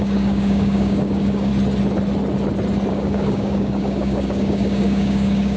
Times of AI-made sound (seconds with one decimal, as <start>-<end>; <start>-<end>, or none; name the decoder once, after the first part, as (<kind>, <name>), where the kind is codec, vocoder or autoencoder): 0.0-1.5 (codec, DAC); 2.9-5.6